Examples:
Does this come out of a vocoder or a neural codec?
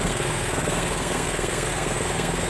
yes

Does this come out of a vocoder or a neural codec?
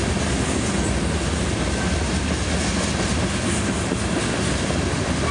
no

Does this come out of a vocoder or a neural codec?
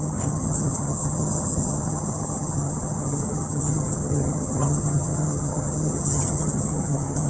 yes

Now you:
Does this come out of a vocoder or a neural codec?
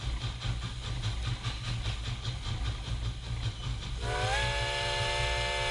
no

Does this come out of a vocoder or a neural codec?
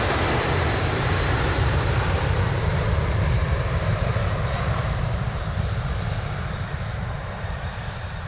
yes